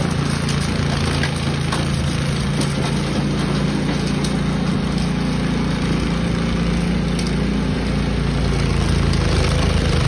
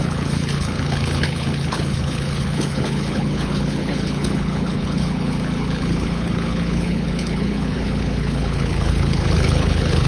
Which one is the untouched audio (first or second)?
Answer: first